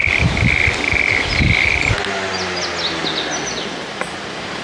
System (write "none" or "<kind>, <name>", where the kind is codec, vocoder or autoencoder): none